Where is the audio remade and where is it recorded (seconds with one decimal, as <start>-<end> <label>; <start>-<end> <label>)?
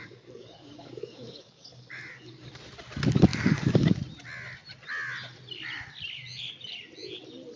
0.0-2.5 remade; 2.5-3.3 recorded; 3.3-3.9 remade; 3.9-7.6 recorded